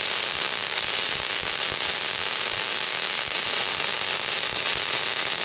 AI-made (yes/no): no